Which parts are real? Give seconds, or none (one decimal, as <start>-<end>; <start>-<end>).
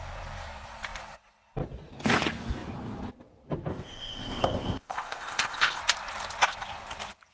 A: 0.0-3.7; 5.8-7.3